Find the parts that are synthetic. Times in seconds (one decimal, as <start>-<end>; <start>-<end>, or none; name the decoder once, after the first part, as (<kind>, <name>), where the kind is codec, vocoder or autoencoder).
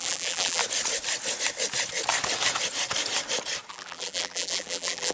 0.0-0.6 (vocoder, BigVGAN v2); 3.7-5.1